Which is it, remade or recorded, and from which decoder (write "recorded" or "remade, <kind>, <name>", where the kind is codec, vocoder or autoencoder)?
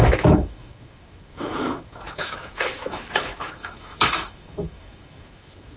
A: remade, autoencoder, DAC-VAE